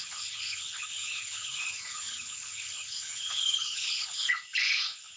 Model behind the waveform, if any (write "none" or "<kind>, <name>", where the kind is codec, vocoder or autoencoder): codec, HILCodec